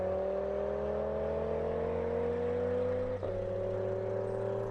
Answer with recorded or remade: recorded